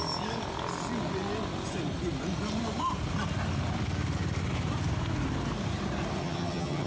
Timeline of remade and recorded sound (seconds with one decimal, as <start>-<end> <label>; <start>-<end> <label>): 0.0-6.2 recorded; 6.2-6.9 remade